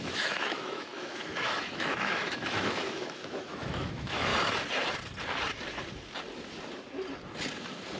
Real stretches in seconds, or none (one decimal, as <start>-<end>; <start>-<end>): 4.3-8.0

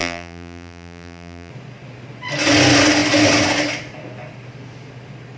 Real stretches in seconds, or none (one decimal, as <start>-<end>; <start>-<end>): 1.5-5.4

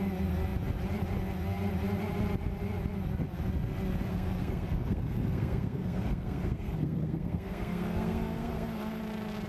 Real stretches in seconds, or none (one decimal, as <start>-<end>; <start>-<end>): 0.0-4.1; 9.0-9.5

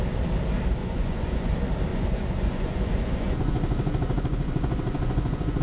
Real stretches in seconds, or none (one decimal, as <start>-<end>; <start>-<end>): 0.0-0.8; 1.5-1.9

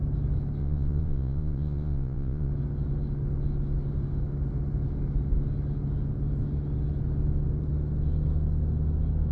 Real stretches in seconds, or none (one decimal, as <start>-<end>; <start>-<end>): 0.0-0.6; 2.5-9.3

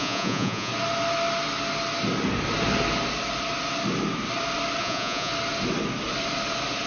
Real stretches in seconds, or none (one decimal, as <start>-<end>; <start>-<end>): 0.7-4.8; 5.3-6.9